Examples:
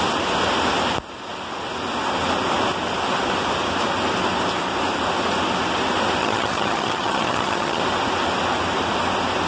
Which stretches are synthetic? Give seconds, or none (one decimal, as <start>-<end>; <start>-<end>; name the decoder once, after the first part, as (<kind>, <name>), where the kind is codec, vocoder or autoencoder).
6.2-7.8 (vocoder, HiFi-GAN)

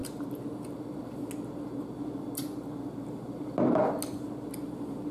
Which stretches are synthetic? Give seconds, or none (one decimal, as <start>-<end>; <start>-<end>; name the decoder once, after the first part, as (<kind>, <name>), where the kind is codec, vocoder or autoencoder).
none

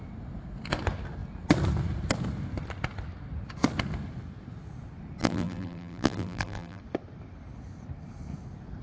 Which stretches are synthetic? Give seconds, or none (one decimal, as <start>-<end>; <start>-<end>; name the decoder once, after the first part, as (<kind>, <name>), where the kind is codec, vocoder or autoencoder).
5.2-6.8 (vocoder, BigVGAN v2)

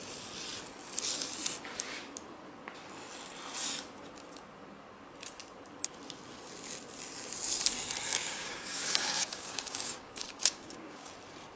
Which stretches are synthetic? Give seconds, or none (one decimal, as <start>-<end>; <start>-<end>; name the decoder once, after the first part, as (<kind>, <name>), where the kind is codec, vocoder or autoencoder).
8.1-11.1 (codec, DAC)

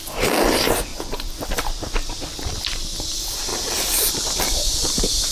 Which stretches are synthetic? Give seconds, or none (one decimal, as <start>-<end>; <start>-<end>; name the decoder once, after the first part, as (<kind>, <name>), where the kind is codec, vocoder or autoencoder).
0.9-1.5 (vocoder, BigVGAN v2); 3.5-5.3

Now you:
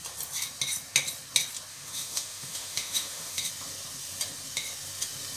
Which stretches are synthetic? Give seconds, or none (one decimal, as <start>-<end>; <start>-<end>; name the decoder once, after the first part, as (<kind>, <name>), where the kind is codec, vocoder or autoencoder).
1.7-3.5 (autoencoder, DAC-VAE)